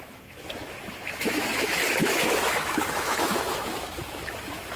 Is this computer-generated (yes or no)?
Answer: yes